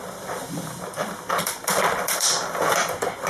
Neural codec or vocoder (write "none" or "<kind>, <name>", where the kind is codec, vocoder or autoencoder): vocoder, BigVGAN v2